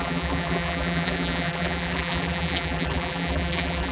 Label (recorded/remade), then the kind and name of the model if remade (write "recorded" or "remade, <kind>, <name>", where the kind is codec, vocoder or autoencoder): remade, vocoder, BigVGAN v2